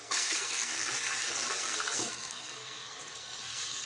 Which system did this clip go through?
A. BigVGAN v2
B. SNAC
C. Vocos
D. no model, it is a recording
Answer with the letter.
B